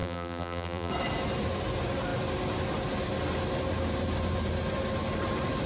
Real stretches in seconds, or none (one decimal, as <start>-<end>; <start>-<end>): 0.9-5.7